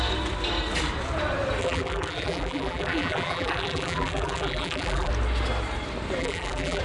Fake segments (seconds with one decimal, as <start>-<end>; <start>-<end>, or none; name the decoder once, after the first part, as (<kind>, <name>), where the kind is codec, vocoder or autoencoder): 1.6-5.1 (vocoder, BigVGAN v2); 6.2-6.8